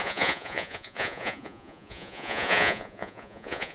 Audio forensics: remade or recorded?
remade